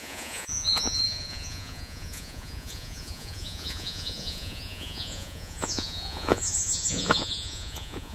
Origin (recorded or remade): remade